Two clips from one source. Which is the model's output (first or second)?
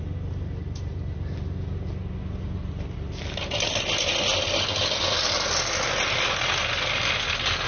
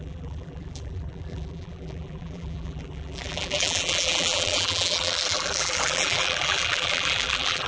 second